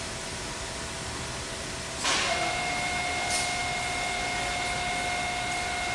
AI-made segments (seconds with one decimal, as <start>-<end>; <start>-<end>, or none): none